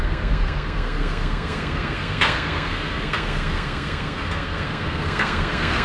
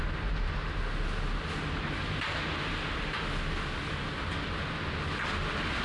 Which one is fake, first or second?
first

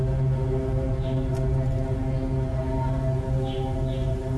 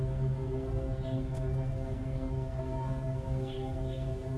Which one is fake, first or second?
second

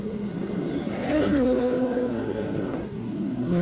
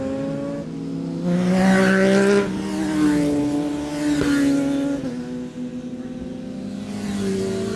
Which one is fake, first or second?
first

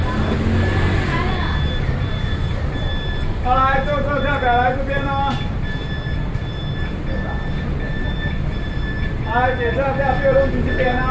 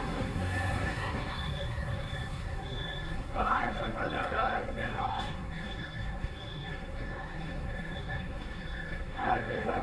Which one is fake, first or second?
second